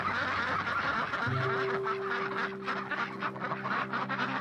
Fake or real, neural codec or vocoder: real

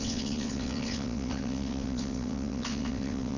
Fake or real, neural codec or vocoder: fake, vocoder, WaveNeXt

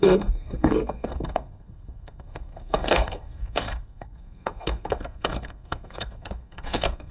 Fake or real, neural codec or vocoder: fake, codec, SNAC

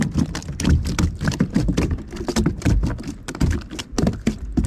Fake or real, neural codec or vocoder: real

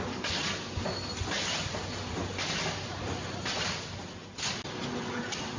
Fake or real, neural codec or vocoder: real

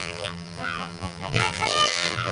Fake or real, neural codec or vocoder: fake, vocoder, BigVGAN v2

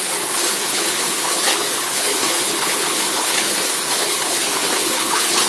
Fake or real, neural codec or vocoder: fake, codec, HILCodec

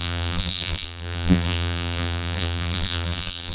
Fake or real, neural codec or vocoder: fake, vocoder, BigVGAN v2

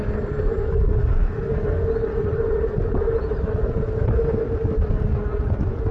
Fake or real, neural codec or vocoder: real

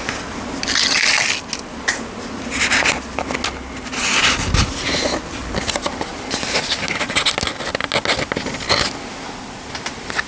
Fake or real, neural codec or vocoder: real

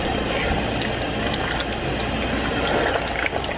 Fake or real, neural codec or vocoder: real